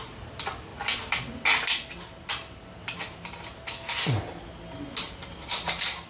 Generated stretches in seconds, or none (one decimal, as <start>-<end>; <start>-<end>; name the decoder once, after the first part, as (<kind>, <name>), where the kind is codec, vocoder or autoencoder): none